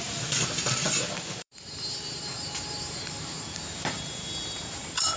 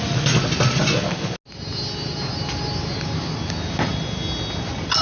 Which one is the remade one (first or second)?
first